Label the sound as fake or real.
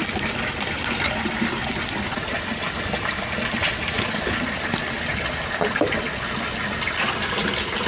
real